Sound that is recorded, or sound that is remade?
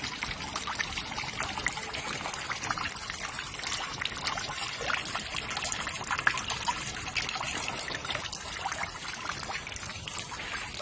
recorded